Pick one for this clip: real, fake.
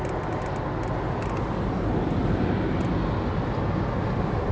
real